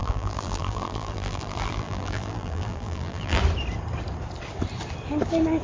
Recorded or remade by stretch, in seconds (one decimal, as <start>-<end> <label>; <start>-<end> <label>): 0.0-3.4 remade; 3.4-5.6 recorded